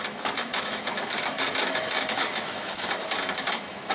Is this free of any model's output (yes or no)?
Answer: no